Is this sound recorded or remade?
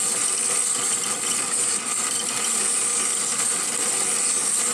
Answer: recorded